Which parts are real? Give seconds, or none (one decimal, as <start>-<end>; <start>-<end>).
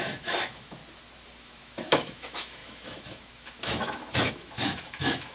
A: 0.8-1.4